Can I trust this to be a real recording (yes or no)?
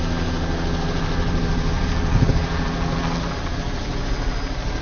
yes